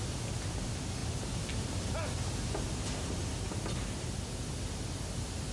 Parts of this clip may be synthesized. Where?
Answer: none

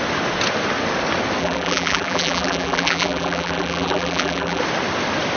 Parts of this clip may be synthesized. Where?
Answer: 1.4-4.6

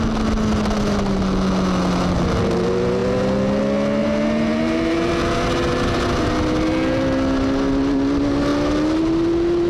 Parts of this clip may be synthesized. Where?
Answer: 4.0-5.1

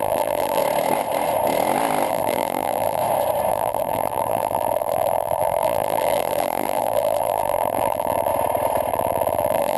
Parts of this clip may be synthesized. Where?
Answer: 0.0-0.6; 2.1-3.0; 3.5-8.3; 8.9-9.8

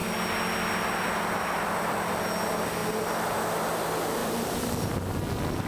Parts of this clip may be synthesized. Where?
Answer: 4.2-4.9

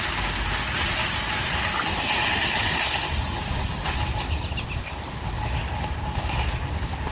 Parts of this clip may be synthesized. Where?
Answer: none

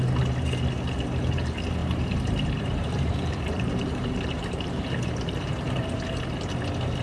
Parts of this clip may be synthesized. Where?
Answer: 1.8-6.0